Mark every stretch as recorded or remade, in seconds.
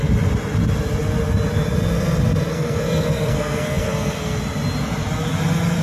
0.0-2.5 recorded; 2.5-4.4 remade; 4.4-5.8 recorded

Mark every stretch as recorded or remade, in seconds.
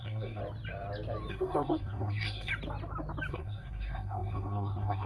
0.0-0.4 remade; 0.4-1.3 recorded; 1.3-2.5 remade; 2.5-3.3 recorded; 3.3-5.1 remade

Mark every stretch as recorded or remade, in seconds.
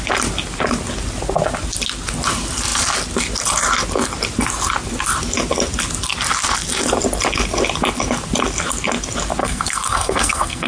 0.0-9.4 recorded; 9.4-10.7 remade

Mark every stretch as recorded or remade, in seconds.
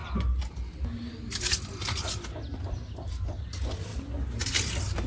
0.0-5.1 recorded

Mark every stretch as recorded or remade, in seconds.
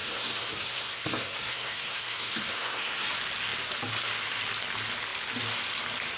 0.0-3.1 remade; 3.1-6.2 recorded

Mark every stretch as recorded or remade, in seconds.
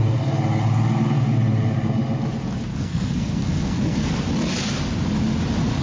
0.0-2.7 recorded; 2.7-4.1 remade; 4.1-5.8 recorded